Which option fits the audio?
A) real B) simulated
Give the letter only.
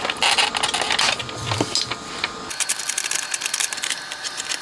A